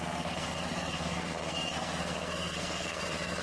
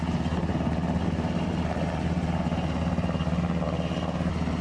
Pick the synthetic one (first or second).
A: first